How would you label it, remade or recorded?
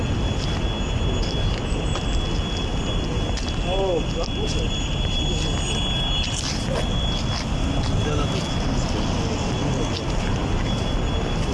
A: recorded